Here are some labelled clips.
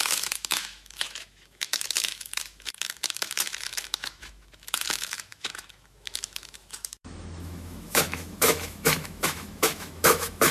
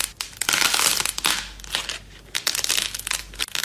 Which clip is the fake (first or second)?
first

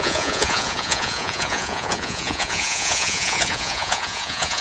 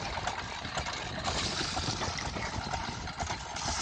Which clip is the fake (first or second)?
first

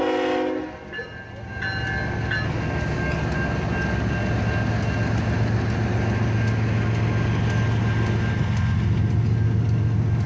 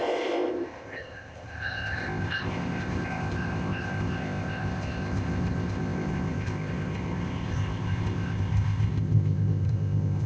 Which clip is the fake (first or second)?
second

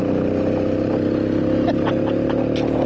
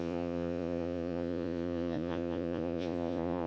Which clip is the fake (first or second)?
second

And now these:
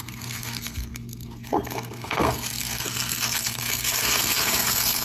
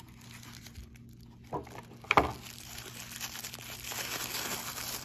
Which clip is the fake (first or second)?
first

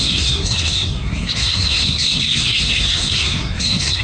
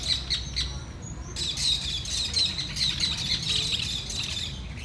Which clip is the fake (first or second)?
first